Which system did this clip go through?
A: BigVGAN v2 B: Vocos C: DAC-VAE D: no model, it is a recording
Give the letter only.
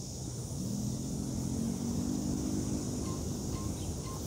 D